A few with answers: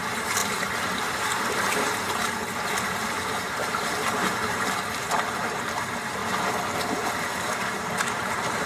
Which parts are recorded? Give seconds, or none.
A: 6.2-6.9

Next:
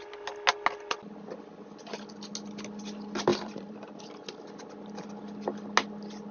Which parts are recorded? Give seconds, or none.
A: 0.0-3.3; 4.0-6.3

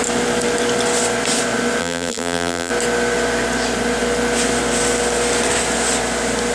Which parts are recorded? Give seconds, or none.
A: 0.0-1.8; 2.7-6.5

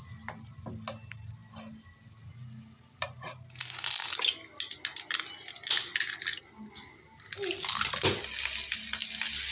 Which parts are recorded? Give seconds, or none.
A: 0.0-9.5